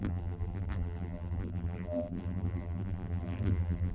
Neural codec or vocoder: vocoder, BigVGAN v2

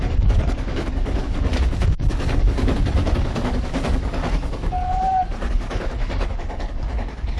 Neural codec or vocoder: codec, DAC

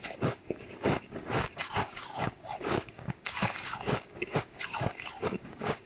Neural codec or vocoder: codec, DAC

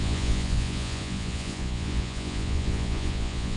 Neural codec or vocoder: vocoder, Vocos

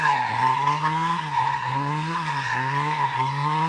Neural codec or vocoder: codec, SNAC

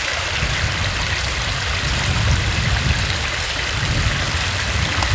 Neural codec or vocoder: none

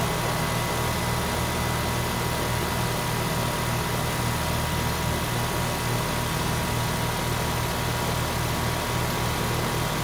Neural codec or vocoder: none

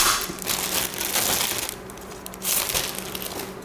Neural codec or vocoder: none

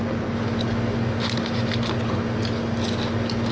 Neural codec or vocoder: none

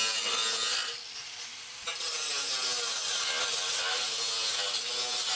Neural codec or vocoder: none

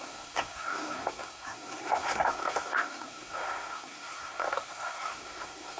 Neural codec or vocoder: codec, SNAC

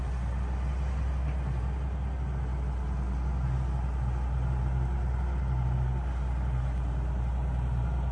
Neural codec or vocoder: none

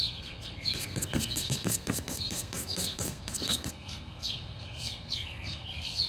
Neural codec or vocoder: codec, SNAC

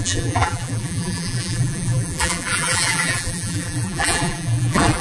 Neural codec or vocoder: vocoder, BigVGAN v2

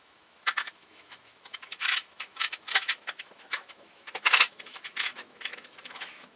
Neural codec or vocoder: autoencoder, DAC-VAE